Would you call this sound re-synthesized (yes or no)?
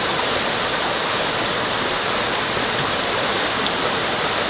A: no